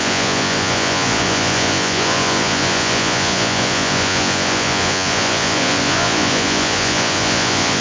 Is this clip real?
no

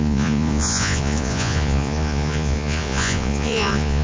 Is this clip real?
no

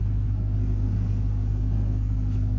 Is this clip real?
no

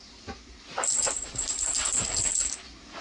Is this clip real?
yes